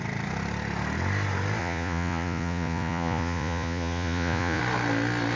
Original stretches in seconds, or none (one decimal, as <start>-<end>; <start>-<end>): 0.0-1.6; 4.6-5.4